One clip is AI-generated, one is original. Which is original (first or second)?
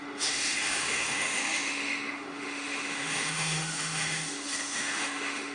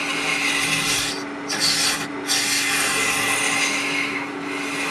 second